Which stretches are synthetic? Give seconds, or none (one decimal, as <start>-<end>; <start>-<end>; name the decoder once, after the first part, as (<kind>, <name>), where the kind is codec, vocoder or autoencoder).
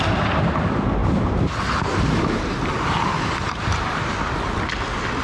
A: 1.0-4.1 (vocoder, BigVGAN v2)